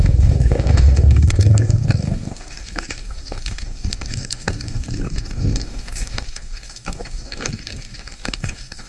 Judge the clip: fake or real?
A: fake